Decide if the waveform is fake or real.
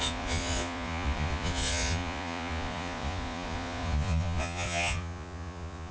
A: fake